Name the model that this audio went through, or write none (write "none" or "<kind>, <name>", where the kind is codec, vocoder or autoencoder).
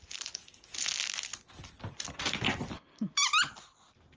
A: none